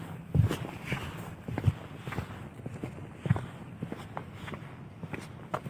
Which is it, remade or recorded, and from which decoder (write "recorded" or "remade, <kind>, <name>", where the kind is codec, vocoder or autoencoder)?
recorded